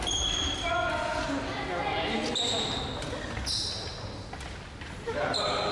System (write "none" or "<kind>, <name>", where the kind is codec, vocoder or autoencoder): none